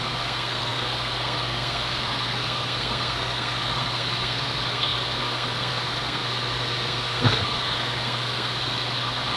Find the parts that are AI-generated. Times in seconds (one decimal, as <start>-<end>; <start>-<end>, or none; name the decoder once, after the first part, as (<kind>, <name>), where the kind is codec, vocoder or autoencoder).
0.0-9.4 (codec, SNAC)